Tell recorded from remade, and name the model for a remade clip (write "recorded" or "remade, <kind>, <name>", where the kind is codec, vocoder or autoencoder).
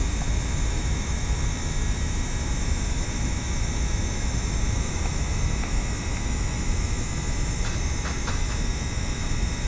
remade, autoencoder, DAC-VAE